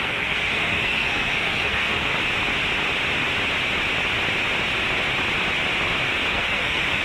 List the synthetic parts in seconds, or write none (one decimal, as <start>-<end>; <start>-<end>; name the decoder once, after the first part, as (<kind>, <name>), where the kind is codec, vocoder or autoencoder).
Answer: 0.0-2.1 (codec, SNAC); 6.3-7.0

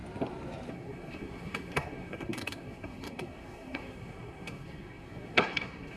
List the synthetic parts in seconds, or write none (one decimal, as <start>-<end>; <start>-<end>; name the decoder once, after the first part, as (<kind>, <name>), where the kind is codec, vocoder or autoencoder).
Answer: 0.7-6.0 (codec, SNAC)

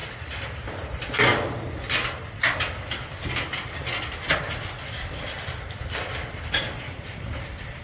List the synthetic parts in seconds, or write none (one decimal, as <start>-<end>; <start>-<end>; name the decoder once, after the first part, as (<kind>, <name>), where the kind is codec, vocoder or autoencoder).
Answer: none

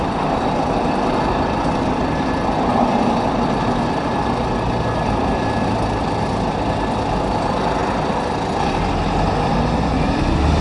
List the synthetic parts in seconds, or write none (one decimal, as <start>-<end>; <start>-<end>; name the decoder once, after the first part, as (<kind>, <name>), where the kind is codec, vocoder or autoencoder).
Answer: none

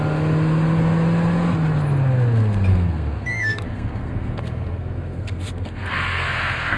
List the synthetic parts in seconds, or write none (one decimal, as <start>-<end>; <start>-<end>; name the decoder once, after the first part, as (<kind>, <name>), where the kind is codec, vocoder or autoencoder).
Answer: 2.7-6.8 (codec, SNAC)

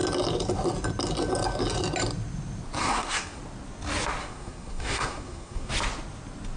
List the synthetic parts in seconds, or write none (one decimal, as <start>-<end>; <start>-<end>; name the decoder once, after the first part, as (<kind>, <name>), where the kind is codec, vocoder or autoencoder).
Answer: 2.8-3.4 (codec, SNAC); 4.2-5.7

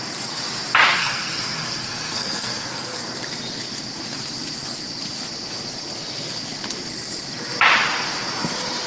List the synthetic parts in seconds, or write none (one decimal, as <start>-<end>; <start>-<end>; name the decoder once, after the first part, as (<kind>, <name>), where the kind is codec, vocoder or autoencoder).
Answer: 1.0-3.0 (codec, SNAC)

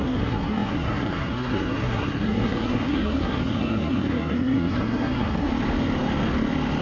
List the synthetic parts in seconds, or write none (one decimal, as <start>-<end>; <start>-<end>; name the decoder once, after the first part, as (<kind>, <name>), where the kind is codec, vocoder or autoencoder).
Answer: 0.0-5.5 (codec, SNAC)